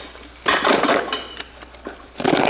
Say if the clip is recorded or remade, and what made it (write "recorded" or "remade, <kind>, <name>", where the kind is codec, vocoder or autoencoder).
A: recorded